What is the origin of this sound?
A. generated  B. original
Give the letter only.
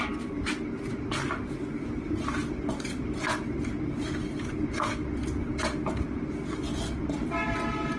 B